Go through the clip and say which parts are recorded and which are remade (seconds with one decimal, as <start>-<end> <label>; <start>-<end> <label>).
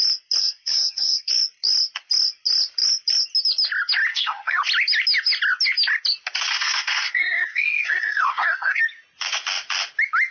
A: 0.0-0.4 recorded; 0.4-1.3 remade; 1.3-4.1 recorded; 4.1-4.6 remade; 4.6-6.5 recorded; 6.5-8.8 remade; 8.8-10.3 recorded